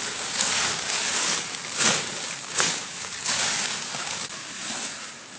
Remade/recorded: remade